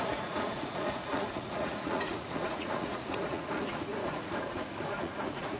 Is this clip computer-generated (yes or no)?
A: yes